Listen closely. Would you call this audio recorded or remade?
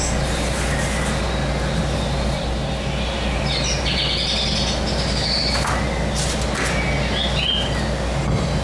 recorded